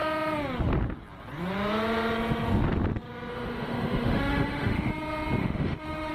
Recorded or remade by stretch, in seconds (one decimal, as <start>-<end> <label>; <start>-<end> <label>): 0.0-3.3 recorded; 3.3-4.9 remade; 4.9-5.4 recorded; 5.4-6.1 remade